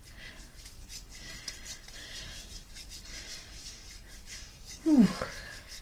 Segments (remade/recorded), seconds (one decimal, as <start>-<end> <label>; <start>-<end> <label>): 0.0-0.8 recorded; 0.8-1.4 remade; 1.4-2.0 recorded; 2.0-5.8 remade